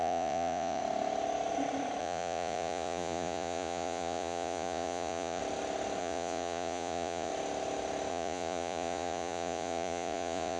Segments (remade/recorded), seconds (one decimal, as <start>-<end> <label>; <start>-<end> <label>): 0.0-0.8 remade; 0.8-2.0 recorded; 2.0-5.4 remade; 5.4-6.0 recorded; 6.0-7.3 remade; 7.3-8.1 recorded; 8.1-10.6 remade